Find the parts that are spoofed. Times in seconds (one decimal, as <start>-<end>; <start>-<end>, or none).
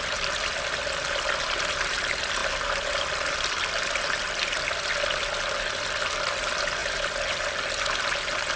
none